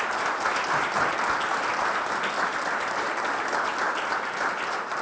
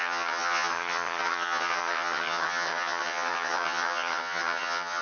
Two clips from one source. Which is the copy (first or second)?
second